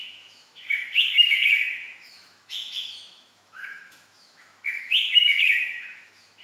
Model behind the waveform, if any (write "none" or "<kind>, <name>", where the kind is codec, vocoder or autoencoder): autoencoder, DAC-VAE